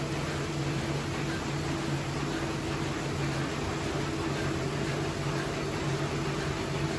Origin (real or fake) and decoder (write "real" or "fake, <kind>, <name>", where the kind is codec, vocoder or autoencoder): real